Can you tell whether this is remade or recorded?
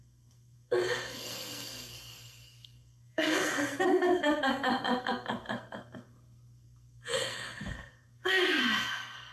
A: remade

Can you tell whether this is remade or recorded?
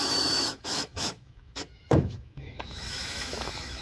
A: remade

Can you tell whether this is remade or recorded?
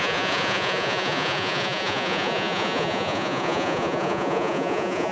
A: remade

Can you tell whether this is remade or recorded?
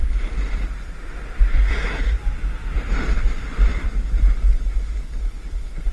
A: remade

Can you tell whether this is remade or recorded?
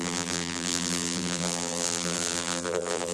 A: remade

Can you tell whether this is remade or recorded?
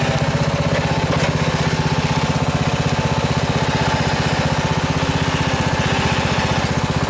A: recorded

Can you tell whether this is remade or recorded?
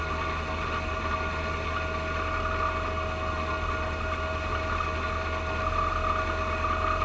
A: recorded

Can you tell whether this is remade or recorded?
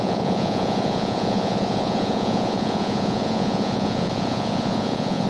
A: remade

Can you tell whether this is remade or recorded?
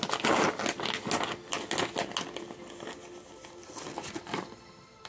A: recorded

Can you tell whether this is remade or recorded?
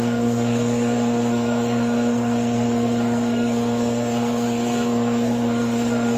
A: remade